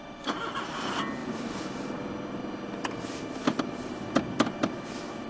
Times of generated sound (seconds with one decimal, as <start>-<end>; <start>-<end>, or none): 1.2-2.0